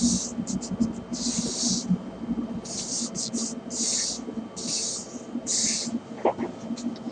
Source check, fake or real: real